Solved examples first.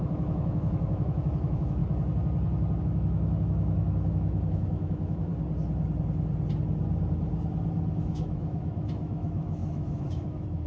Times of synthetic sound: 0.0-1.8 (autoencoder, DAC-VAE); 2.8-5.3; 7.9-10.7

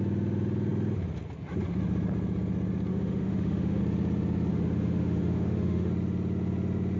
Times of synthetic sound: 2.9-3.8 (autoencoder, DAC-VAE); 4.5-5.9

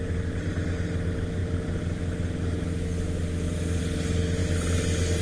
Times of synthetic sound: none

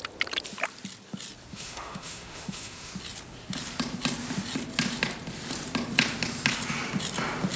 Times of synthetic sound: 1.5-2.9 (autoencoder, DAC-VAE)

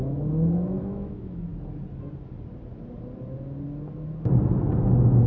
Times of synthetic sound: 0.0-1.5 (autoencoder, DAC-VAE); 4.7-5.3